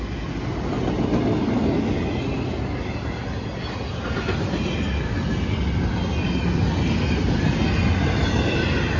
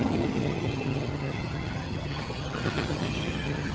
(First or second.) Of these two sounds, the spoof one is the second